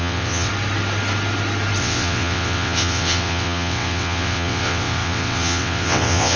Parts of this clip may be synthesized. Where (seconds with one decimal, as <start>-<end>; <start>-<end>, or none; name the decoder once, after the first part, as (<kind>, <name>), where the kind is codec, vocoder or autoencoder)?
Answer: 0.0-0.5 (vocoder, WaveNeXt); 1.8-6.4